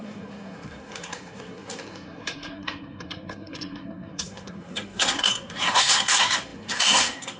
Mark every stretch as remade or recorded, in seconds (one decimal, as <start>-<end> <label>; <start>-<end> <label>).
0.0-7.4 remade